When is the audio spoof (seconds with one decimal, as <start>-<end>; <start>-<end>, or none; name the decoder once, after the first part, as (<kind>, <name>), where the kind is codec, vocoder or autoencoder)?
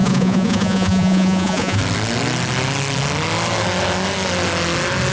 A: 0.0-1.8 (vocoder, Vocos)